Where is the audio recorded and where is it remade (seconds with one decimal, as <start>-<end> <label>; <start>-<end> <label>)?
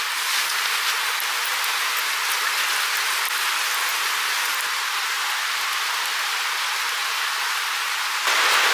0.0-8.7 recorded